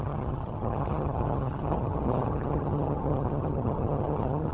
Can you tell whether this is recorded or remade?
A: remade